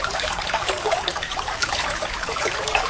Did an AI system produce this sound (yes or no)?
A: yes